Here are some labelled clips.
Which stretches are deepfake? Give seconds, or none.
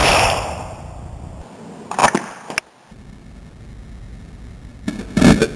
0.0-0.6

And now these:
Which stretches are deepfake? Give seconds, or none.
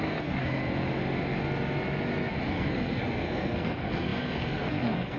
0.0-0.6; 2.5-5.2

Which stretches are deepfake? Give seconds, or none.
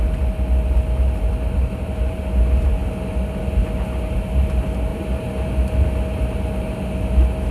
1.6-2.2; 4.9-5.5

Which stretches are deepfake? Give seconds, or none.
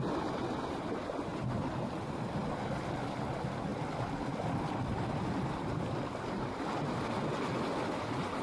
none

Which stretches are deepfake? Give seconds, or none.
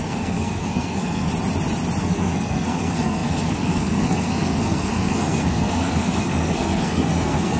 0.0-1.3; 2.0-7.6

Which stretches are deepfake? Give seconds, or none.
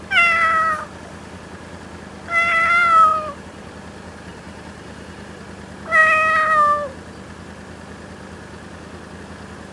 2.8-3.7; 4.3-5.4